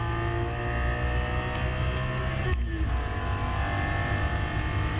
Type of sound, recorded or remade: recorded